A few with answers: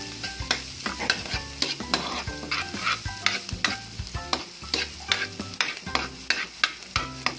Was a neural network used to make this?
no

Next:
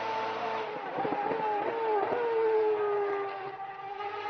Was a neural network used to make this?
no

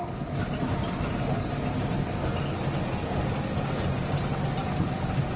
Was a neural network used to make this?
no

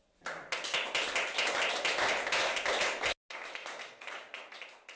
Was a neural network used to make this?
no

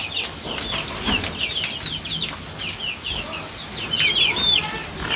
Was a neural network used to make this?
no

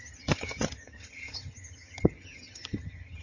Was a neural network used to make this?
yes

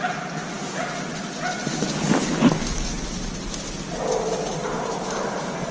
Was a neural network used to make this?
no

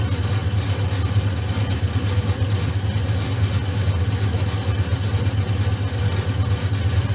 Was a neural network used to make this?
no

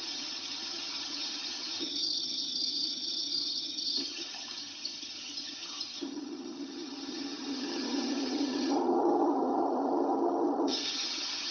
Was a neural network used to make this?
yes